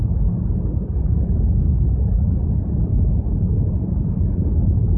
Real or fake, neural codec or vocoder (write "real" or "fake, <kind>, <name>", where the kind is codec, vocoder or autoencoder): real